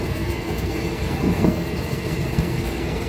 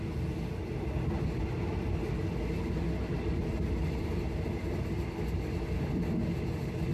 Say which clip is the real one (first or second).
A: second